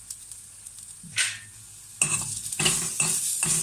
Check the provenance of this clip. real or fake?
real